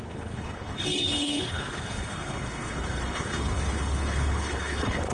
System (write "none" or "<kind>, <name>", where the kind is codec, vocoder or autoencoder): codec, HILCodec